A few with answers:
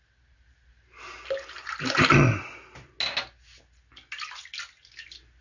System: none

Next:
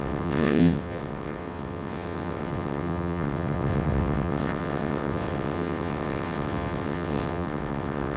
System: vocoder, WaveNeXt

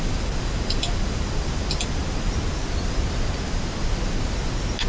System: none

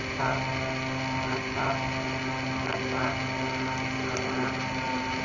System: none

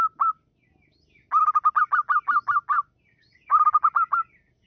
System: none